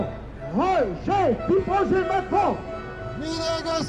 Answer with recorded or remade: recorded